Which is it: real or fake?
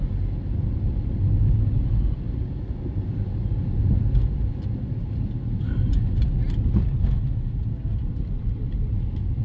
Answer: real